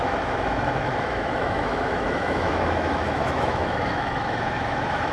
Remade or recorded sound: remade